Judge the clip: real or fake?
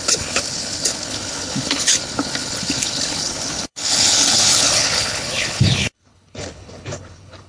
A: fake